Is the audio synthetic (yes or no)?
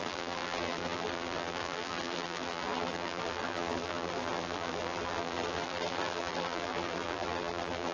yes